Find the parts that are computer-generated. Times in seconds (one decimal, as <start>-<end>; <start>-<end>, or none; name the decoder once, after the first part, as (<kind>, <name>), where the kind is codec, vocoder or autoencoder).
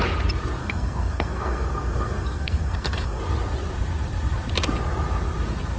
0.6-3.2 (codec, SNAC)